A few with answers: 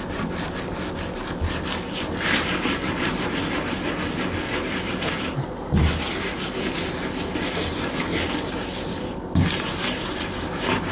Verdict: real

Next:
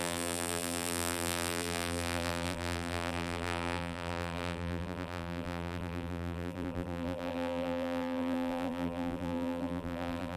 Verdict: fake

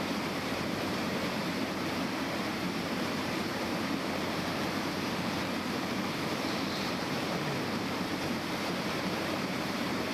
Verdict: fake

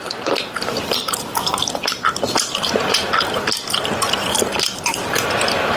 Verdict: fake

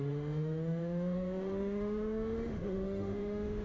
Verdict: fake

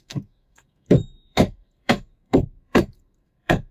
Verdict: fake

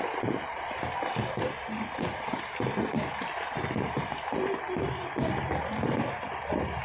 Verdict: real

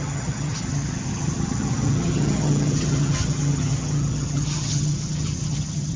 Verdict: fake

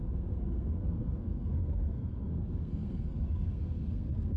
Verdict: fake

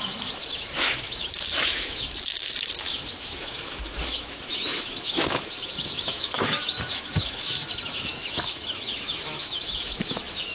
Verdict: fake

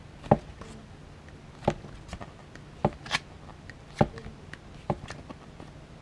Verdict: real